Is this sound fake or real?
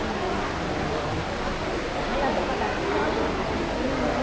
real